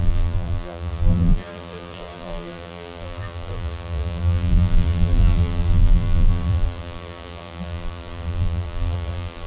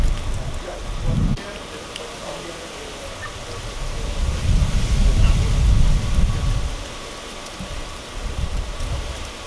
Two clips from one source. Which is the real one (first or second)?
second